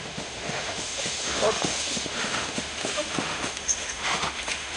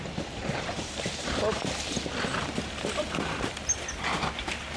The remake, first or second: first